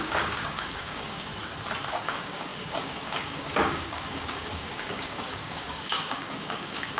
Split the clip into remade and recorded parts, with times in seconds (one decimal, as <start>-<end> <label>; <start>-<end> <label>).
0.0-1.3 remade; 1.3-1.9 recorded; 1.9-7.0 remade